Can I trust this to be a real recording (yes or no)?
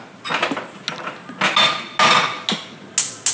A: yes